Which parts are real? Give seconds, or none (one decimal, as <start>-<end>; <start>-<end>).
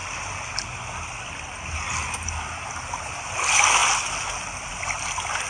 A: 0.0-5.5